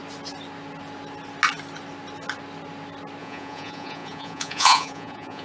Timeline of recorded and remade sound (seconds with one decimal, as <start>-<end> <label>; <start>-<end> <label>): 0.0-3.2 recorded; 3.2-5.4 remade